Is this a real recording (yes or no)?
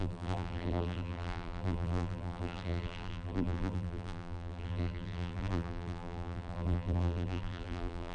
no